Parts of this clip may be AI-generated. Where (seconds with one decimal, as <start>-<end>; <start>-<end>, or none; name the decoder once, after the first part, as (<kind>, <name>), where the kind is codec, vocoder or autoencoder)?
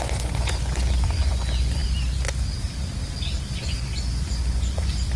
0.0-1.8 (vocoder, Vocos); 3.6-5.2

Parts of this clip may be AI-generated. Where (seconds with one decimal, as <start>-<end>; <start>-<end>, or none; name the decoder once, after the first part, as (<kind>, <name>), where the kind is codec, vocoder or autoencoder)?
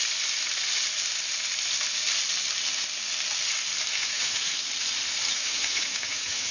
3.9-4.7 (autoencoder, DAC-VAE); 5.3-6.5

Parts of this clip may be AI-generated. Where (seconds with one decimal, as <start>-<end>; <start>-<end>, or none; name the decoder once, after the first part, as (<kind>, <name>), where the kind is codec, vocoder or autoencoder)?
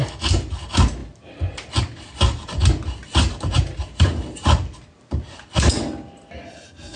none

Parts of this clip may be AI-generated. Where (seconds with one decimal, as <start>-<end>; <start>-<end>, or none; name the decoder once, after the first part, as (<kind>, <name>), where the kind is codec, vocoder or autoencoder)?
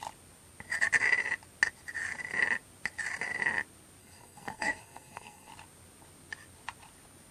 4.0-5.5 (codec, SNAC)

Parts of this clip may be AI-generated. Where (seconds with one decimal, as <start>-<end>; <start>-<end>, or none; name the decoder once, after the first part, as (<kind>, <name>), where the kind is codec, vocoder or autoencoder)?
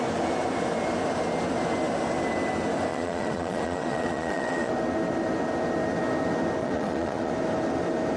2.9-4.7 (vocoder, Vocos); 6.6-7.3